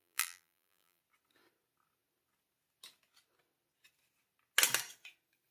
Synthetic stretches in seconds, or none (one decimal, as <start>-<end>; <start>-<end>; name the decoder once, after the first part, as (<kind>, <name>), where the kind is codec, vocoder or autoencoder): 0.0-1.0 (vocoder, BigVGAN v2)

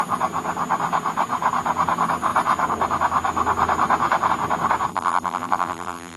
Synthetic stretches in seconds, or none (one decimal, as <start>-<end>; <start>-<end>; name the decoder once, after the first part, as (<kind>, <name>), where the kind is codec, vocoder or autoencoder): 4.9-6.2 (vocoder, BigVGAN v2)

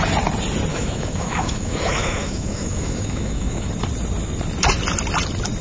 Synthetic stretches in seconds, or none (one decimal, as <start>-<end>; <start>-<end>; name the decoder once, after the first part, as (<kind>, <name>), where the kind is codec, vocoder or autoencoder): 0.7-3.7 (autoencoder, DAC-VAE)

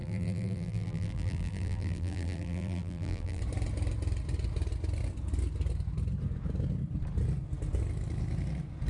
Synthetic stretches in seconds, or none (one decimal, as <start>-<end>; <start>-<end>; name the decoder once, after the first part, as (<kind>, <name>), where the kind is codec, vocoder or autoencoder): 0.0-3.4 (vocoder, BigVGAN v2)

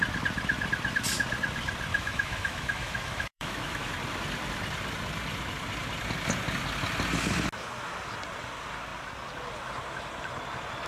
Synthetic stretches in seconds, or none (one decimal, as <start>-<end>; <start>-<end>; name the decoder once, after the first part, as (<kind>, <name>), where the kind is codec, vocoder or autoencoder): 1.9-3.9 (autoencoder, DAC-VAE)

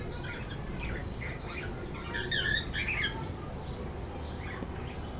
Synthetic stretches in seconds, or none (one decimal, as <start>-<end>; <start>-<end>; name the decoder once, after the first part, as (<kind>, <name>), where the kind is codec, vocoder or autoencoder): 1.0-1.6 (codec, DAC)

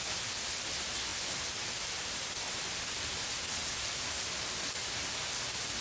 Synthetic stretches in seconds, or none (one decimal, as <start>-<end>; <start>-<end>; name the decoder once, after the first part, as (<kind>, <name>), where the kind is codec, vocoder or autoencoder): none

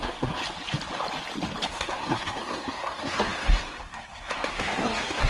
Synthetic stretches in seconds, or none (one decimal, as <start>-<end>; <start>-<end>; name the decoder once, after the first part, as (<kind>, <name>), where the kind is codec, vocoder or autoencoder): 0.0-0.4 (codec, SNAC); 1.7-5.3